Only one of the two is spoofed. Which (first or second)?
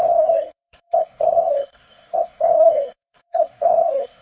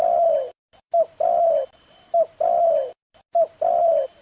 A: first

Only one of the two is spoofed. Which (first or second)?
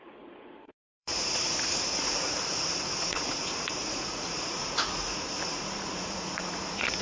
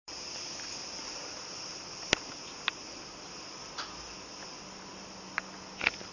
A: first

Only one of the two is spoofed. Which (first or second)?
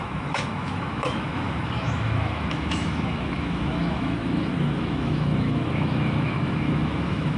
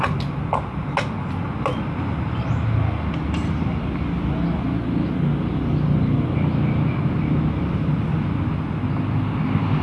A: first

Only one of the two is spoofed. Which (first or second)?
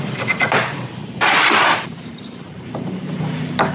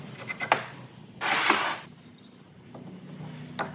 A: first